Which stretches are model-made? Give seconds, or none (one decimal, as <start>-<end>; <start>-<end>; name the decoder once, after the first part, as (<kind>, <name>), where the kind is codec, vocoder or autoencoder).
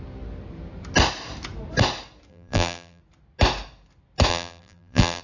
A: 2.3-3.0 (vocoder, BigVGAN v2); 4.3-5.2